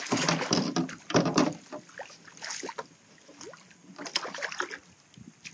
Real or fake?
real